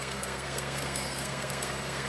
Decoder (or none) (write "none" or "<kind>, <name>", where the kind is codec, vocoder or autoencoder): codec, SNAC